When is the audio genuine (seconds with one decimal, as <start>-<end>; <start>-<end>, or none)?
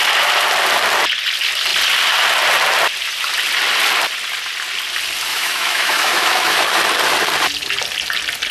0.0-5.3; 6.8-8.5